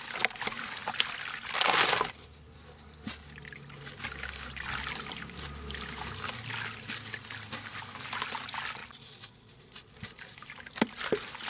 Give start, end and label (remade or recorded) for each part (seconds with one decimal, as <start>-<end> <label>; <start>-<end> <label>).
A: 0.0-11.5 recorded